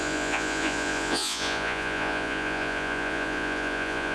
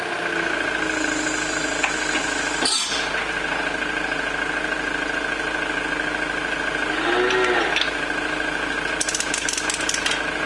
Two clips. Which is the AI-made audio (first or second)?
first